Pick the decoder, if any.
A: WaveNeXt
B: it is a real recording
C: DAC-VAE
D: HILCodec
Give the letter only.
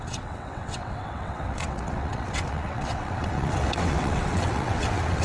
A